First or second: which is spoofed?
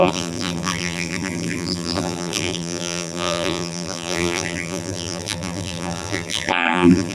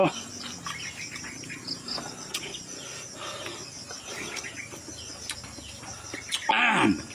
first